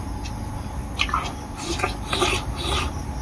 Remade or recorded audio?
recorded